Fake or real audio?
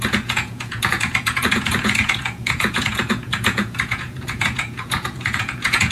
fake